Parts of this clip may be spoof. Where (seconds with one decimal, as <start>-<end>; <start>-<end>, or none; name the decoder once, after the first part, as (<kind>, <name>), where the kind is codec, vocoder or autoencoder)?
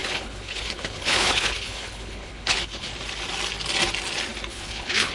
0.0-2.9 (codec, HILCodec); 4.5-5.1